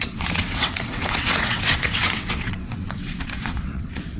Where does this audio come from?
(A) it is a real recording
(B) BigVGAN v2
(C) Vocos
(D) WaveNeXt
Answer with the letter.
D